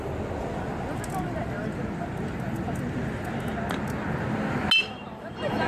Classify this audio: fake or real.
real